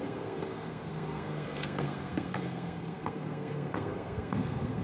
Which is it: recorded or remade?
remade